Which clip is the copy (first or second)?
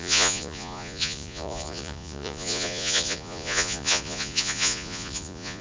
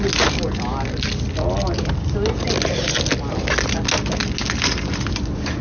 first